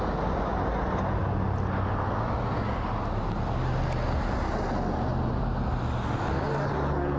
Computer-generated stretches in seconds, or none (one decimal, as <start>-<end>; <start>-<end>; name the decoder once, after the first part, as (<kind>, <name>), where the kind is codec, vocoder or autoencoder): none